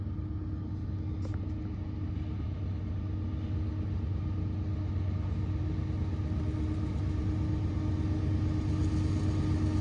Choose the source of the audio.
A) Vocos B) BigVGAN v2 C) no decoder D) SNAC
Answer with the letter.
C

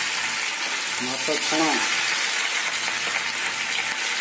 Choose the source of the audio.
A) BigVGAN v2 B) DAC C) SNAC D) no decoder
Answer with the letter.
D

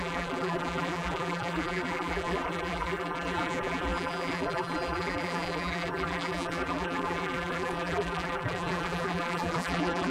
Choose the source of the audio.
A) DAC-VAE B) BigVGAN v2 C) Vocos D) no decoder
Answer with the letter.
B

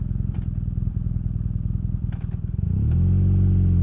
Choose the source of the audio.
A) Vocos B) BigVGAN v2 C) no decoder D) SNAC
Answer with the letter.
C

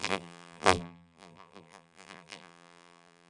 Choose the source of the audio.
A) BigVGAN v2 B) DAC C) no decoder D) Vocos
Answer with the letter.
A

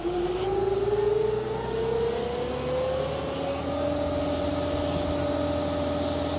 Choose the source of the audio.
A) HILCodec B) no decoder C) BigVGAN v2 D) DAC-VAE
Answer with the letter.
B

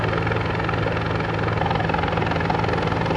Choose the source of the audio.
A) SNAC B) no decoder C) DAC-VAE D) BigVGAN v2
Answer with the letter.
B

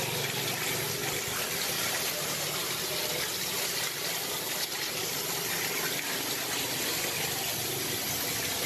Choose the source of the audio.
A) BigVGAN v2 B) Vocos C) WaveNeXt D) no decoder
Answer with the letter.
D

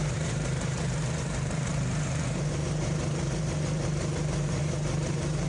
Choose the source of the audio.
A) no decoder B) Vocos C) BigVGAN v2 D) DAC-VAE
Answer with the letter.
C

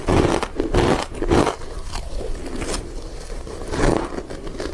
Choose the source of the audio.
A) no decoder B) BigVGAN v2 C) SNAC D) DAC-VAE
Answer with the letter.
A